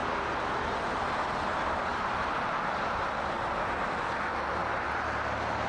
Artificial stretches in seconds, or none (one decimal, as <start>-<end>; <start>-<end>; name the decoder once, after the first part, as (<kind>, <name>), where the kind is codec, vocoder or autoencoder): 0.0-1.1 (vocoder, BigVGAN v2); 1.9-3.0